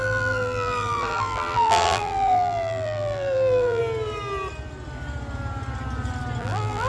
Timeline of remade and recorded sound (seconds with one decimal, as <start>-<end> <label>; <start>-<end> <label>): 0.0-3.8 remade; 3.8-6.4 recorded; 6.4-6.9 remade